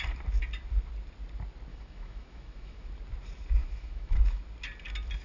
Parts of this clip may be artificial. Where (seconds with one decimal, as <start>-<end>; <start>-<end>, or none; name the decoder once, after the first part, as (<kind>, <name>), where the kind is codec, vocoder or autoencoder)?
1.7-2.9 (autoencoder, DAC-VAE); 3.6-4.4